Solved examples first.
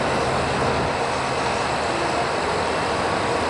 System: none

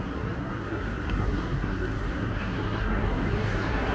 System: codec, SNAC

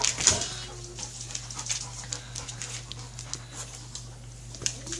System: none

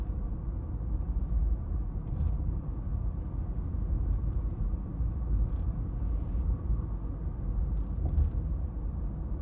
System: none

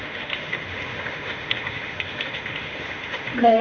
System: autoencoder, DAC-VAE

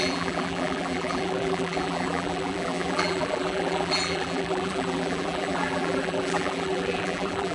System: vocoder, BigVGAN v2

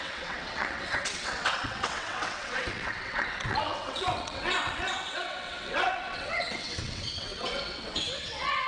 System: vocoder, WaveNeXt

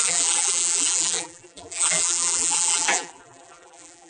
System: vocoder, BigVGAN v2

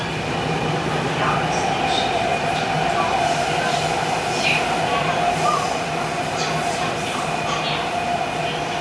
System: none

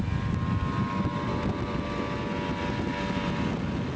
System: none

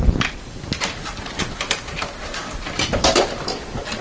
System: none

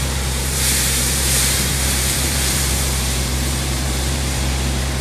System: vocoder, BigVGAN v2